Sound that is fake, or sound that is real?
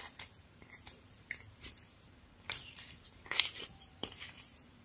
fake